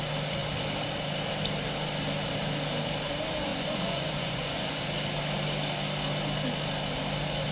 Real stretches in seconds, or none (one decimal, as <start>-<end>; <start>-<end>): 0.0-3.5; 4.8-7.5